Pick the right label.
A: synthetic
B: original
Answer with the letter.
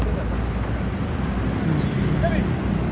B